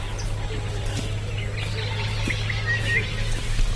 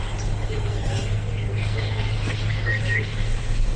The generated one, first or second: second